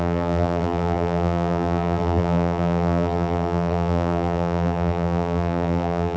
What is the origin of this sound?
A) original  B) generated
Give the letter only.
B